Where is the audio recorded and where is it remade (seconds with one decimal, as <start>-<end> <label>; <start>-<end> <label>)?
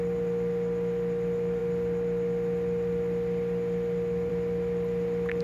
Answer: 0.0-5.4 recorded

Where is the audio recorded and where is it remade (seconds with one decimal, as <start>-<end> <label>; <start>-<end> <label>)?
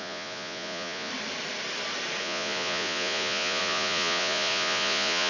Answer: 0.0-1.1 remade; 1.1-2.2 recorded; 2.2-5.3 remade